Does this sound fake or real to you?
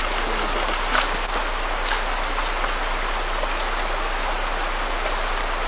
real